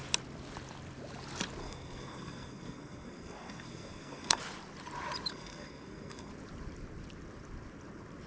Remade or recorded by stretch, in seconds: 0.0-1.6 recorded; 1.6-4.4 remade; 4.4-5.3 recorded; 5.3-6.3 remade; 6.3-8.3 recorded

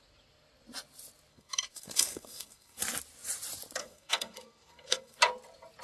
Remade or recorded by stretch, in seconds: 0.0-1.3 recorded; 1.3-2.8 remade; 2.8-3.8 recorded; 3.8-5.2 remade; 5.2-5.8 recorded

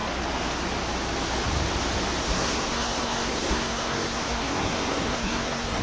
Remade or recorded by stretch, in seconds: 0.0-2.2 recorded; 2.2-5.8 remade

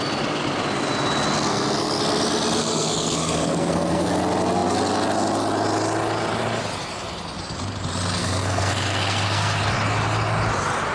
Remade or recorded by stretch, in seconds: 0.0-1.5 recorded; 1.5-2.0 remade; 2.0-2.6 recorded; 2.6-4.1 remade; 4.1-8.2 recorded; 8.2-9.6 remade; 9.6-10.9 recorded

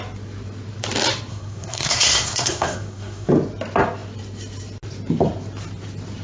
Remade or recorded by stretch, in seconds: 0.0-1.3 recorded; 1.3-3.3 remade; 3.3-6.2 recorded

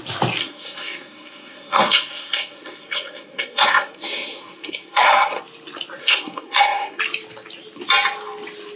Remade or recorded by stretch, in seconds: 0.0-0.4 recorded; 0.4-5.4 remade; 5.4-6.0 recorded; 6.0-7.0 remade; 7.0-8.8 recorded

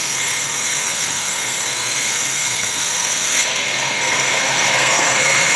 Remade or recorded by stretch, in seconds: 0.0-5.6 remade

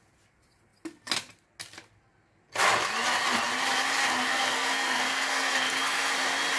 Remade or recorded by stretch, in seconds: 0.0-4.3 recorded; 4.3-6.1 remade; 6.1-6.6 recorded